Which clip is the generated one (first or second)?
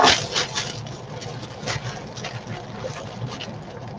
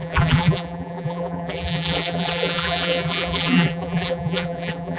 second